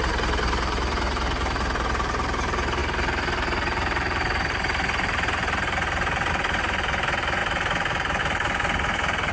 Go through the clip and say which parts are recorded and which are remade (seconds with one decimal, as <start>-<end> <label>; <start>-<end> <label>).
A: 0.0-9.3 remade